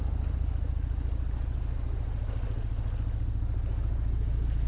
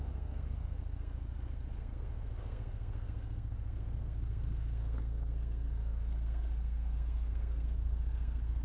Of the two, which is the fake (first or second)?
second